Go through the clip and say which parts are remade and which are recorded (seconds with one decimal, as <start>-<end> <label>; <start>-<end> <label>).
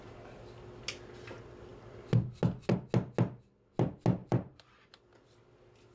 0.0-4.2 recorded; 4.2-5.0 remade; 5.0-5.9 recorded